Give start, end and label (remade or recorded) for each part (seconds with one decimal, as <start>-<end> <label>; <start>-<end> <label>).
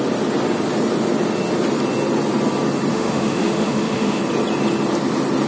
0.0-2.9 recorded; 2.9-4.2 remade; 4.2-5.5 recorded